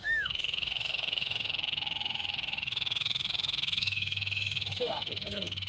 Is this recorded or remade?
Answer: remade